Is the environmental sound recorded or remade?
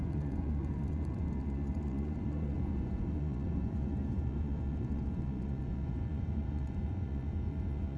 remade